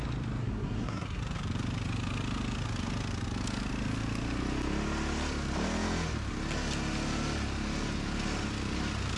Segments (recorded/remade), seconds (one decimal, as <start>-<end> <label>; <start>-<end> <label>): 0.0-0.4 recorded; 0.4-1.2 remade; 1.2-9.2 recorded